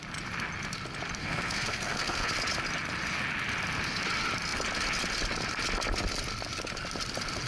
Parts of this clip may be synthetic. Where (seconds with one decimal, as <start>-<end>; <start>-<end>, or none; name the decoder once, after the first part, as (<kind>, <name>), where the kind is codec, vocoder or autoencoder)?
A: 1.2-2.3 (codec, SNAC)